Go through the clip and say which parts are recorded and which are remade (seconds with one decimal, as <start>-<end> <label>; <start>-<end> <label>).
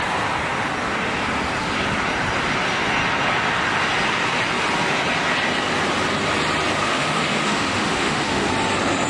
0.0-6.8 recorded; 6.8-8.5 remade; 8.5-9.1 recorded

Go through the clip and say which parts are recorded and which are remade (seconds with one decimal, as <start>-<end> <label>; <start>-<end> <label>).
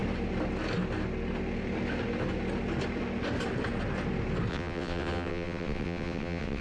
0.0-4.5 recorded; 4.5-6.6 remade